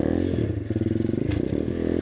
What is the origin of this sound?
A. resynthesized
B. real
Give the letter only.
B